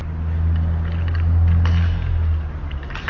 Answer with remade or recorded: recorded